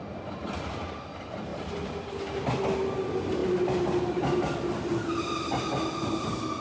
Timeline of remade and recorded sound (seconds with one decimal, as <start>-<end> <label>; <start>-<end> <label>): 0.0-6.6 recorded